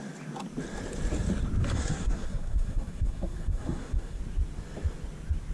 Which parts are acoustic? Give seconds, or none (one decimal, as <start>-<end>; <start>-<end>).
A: 0.0-1.8; 4.2-5.5